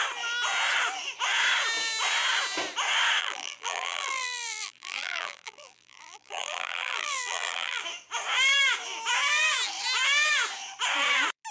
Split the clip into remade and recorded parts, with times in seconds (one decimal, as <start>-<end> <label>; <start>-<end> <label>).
0.0-3.2 recorded; 3.2-7.8 remade; 7.8-11.5 recorded